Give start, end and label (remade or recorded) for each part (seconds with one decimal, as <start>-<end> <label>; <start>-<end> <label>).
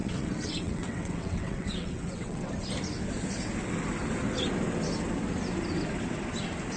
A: 0.0-2.5 remade; 2.5-6.8 recorded